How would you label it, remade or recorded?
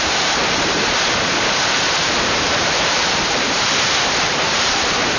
remade